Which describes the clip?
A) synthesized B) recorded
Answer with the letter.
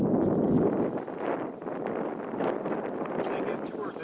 A